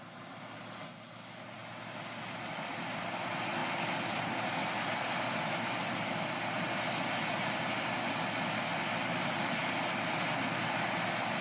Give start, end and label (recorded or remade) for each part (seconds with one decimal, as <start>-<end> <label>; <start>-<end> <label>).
0.0-11.4 recorded